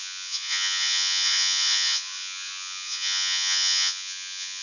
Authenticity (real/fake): fake